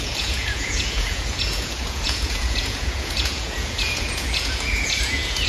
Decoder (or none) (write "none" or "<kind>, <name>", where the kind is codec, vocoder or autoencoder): vocoder, Vocos